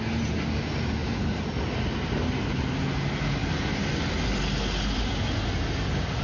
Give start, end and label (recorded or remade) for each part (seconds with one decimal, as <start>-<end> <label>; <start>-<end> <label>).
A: 0.0-6.2 recorded